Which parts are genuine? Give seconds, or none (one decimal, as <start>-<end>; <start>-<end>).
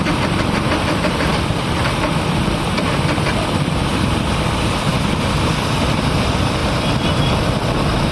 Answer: 4.9-5.5; 6.6-8.1